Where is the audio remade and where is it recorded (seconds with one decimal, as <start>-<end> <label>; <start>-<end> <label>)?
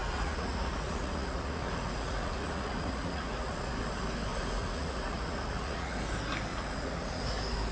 0.0-3.7 remade; 3.7-4.3 recorded; 4.3-6.0 remade; 6.0-6.5 recorded; 6.5-7.2 remade; 7.2-7.7 recorded